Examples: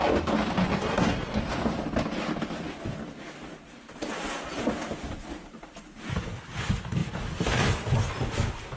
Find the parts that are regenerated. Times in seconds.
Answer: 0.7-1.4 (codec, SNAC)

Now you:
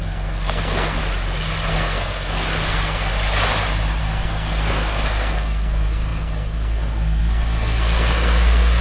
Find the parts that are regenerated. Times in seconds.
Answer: 0.0-1.0 (codec, SNAC); 1.7-3.1; 4.0-8.8

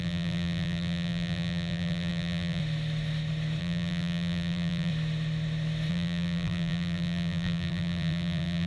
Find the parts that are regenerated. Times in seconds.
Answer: 0.0-2.6 (vocoder, BigVGAN v2); 3.6-4.9; 5.9-8.7

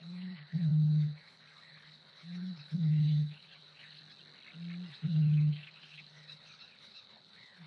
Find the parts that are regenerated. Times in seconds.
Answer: 0.0-4.0 (codec, HILCodec); 4.9-7.7

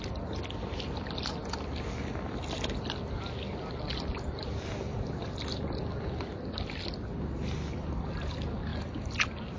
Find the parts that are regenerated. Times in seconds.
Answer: none

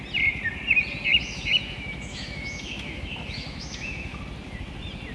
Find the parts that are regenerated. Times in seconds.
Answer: 1.1-4.2 (autoencoder, DAC-VAE)

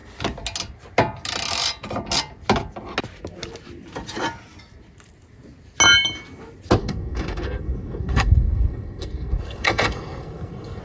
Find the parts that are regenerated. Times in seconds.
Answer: 6.8-10.8 (codec, SNAC)